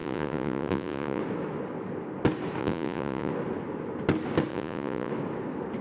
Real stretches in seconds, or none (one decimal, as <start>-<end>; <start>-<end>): 1.2-2.6; 3.3-4.5; 5.1-5.8